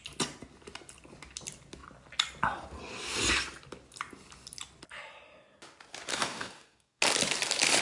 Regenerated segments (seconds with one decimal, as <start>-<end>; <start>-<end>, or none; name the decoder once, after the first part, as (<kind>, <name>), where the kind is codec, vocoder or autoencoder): 6.1-7.0 (codec, DAC)